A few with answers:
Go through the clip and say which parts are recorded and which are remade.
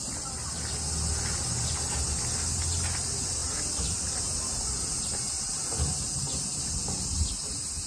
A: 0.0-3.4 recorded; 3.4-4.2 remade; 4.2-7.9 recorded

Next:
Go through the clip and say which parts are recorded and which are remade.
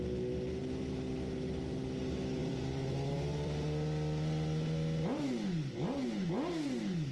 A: 0.0-2.4 recorded; 2.4-5.2 remade; 5.2-7.1 recorded